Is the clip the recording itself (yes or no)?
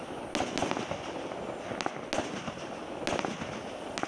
yes